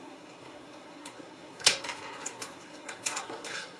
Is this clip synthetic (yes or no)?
yes